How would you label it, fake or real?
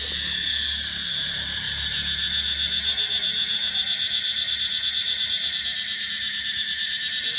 real